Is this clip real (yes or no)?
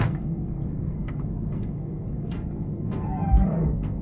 no